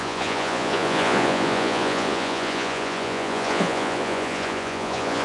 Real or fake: fake